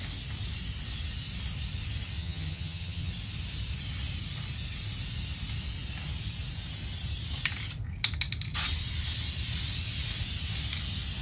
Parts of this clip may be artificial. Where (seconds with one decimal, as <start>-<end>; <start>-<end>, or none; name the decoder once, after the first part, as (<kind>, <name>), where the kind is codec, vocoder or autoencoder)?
2.2-3.1 (vocoder, HiFi-GAN)